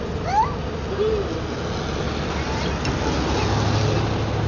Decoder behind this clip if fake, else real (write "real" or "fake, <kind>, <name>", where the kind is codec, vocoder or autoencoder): real